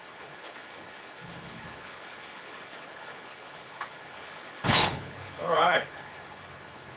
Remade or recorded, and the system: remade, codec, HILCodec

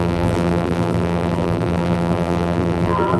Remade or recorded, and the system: remade, vocoder, BigVGAN v2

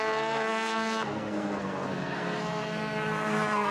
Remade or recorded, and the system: remade, codec, SNAC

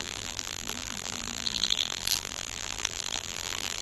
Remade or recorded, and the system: remade, vocoder, BigVGAN v2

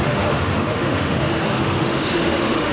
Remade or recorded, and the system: remade, autoencoder, DAC-VAE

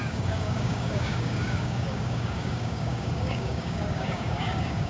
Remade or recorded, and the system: remade, codec, DAC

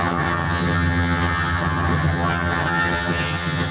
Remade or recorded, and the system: remade, vocoder, HiFi-GAN